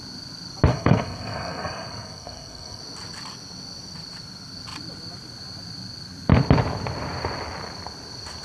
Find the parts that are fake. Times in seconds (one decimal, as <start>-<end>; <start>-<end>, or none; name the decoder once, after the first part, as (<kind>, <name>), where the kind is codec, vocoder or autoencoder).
0.7-2.8 (codec, SNAC)